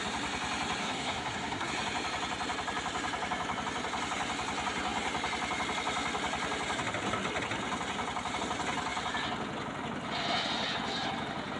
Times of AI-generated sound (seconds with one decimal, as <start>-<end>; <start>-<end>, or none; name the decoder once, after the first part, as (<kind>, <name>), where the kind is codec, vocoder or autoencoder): 0.8-1.7 (codec, SNAC)